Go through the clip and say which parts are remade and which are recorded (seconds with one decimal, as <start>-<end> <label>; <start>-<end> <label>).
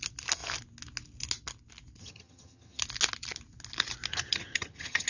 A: 0.0-2.0 recorded; 2.0-2.8 remade; 2.8-4.1 recorded; 4.1-5.1 remade